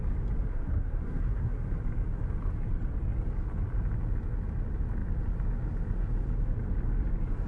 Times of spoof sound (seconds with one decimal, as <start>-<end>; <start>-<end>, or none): 0.5-1.6